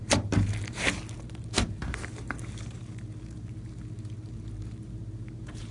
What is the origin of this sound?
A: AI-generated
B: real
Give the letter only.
A